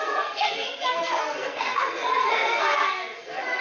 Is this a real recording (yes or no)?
no